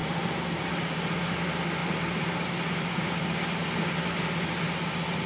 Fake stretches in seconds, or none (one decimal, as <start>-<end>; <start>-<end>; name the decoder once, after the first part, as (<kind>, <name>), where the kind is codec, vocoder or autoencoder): none